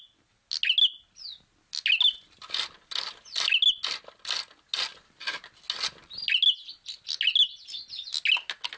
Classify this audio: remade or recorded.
recorded